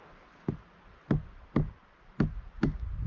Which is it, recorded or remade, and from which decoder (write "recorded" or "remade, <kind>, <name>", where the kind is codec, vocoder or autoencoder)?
recorded